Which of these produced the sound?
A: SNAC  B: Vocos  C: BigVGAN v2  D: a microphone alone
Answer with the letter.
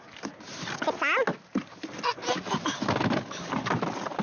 D